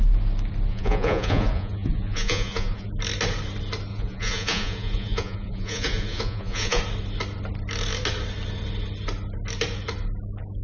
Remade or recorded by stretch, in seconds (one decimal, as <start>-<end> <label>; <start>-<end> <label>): 0.0-0.7 recorded; 0.7-2.9 remade; 2.9-3.9 recorded; 3.9-6.8 remade; 6.8-10.6 recorded